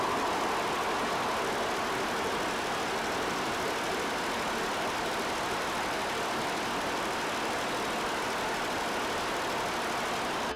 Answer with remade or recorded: recorded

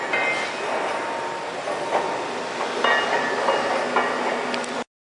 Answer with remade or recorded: recorded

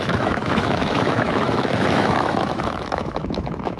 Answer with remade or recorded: remade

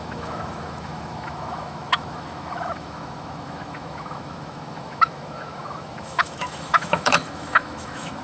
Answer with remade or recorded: remade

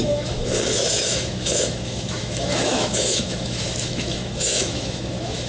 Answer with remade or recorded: remade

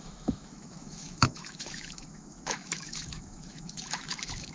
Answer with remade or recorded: remade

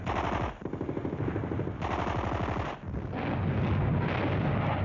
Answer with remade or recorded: recorded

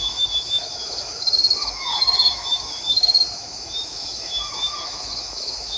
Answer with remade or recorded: remade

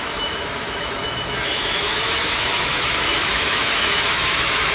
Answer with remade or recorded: remade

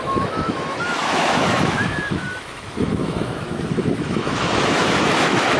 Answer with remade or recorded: remade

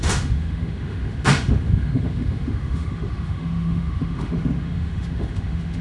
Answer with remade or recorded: remade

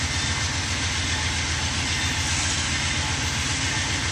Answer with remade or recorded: recorded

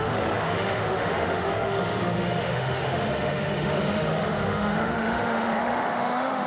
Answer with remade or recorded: remade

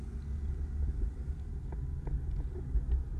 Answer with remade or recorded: recorded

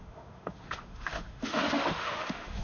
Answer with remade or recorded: remade